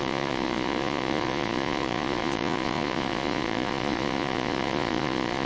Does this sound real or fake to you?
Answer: fake